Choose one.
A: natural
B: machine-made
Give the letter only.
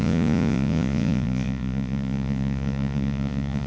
B